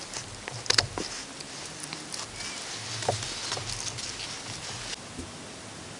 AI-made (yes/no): no